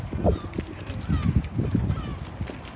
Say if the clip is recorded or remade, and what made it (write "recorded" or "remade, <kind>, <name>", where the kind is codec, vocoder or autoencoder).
recorded